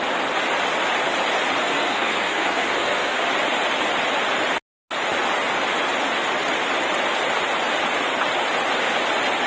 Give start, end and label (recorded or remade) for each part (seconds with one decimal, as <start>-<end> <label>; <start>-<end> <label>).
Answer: 0.0-1.6 recorded; 1.6-3.3 remade; 3.3-9.5 recorded